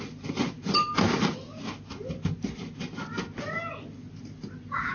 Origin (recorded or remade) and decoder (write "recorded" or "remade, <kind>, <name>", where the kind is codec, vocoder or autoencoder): recorded